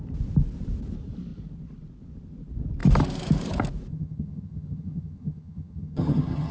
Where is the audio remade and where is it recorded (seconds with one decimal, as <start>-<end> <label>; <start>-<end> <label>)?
0.0-3.9 recorded; 3.9-6.5 remade